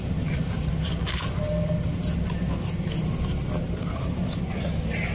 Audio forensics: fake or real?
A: real